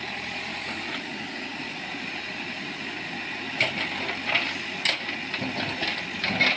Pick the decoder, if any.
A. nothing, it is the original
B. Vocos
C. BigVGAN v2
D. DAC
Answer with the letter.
A